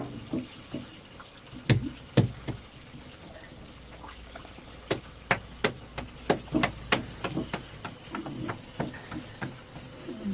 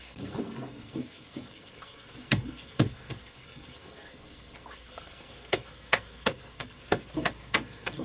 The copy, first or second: second